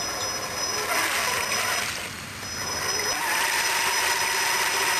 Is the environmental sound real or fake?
real